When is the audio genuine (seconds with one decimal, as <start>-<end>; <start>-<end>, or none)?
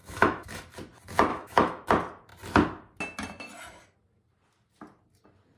0.6-1.3; 1.9-5.6